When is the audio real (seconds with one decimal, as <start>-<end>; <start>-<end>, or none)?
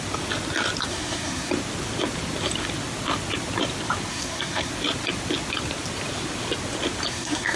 0.0-0.9; 1.5-4.1; 4.7-7.1